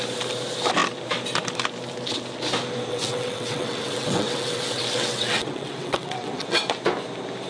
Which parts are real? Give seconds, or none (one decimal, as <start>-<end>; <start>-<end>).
0.0-2.9; 6.6-7.5